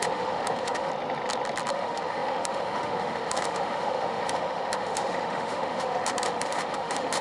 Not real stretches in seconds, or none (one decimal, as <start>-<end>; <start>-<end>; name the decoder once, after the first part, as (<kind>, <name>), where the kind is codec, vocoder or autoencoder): 0.0-0.9 (autoencoder, DAC-VAE); 1.7-7.2